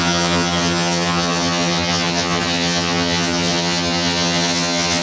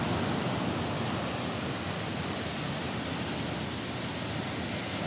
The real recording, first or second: second